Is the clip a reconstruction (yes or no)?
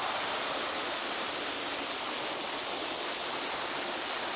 no